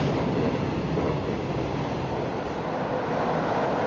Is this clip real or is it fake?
real